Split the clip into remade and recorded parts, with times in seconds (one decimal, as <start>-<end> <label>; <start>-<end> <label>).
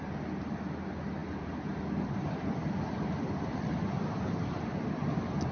0.0-5.5 recorded